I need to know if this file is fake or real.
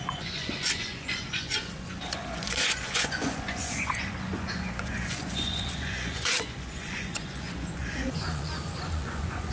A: fake